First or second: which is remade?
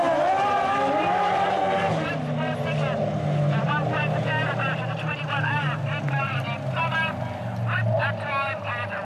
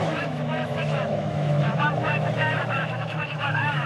second